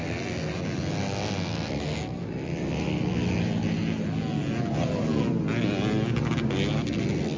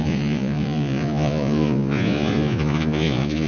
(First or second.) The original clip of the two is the first